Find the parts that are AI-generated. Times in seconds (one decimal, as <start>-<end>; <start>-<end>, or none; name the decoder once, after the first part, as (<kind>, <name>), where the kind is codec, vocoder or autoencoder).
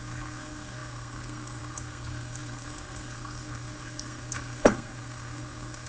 0.0-5.9 (codec, SNAC)